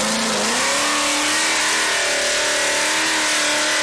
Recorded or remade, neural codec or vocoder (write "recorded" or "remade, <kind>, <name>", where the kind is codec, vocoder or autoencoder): recorded